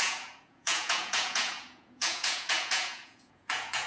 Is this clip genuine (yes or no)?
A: no